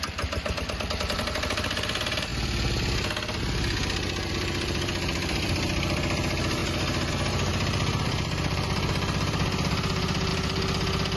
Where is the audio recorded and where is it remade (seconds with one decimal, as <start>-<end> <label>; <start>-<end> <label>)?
0.0-2.3 remade; 2.3-4.3 recorded; 4.3-6.6 remade; 6.6-7.1 recorded; 7.1-7.5 remade; 7.5-8.0 recorded; 8.0-10.3 remade; 10.3-11.2 recorded